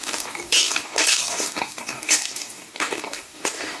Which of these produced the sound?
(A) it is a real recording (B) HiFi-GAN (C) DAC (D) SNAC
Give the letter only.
C